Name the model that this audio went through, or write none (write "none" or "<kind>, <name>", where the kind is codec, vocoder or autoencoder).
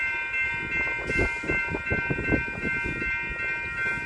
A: none